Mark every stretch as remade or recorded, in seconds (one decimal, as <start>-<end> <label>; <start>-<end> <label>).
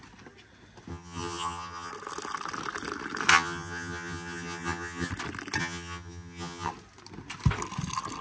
0.0-0.9 recorded; 0.9-1.9 remade; 1.9-3.3 recorded; 3.3-5.1 remade; 5.1-5.6 recorded; 5.6-6.7 remade; 6.7-8.2 recorded